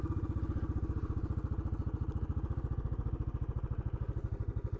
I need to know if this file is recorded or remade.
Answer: recorded